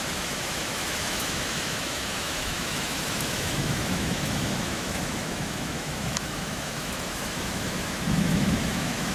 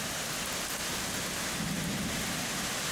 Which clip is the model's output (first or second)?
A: first